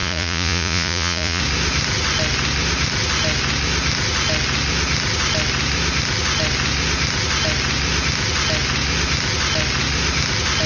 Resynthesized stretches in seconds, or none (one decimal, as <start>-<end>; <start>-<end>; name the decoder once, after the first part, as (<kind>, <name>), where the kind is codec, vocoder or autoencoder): 0.0-1.4 (vocoder, Vocos)